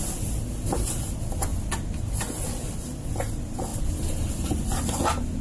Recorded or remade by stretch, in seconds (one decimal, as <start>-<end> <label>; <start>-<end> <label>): 0.0-5.4 recorded